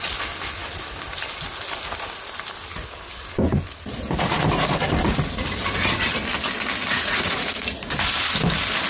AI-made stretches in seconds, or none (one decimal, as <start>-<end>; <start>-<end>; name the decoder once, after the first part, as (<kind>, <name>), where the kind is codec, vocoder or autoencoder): 6.9-7.6 (vocoder, Vocos)